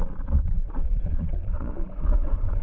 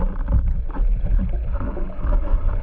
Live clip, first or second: second